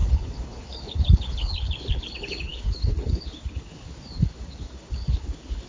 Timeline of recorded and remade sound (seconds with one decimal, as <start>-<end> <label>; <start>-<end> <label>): 0.0-5.7 remade